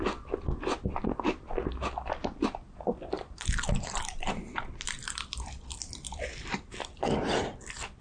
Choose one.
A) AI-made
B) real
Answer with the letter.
B